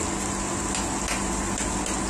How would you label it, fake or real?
real